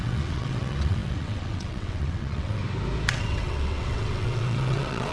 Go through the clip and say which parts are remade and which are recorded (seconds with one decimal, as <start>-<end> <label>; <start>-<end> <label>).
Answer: 0.0-2.6 remade; 2.6-3.1 recorded; 3.1-5.1 remade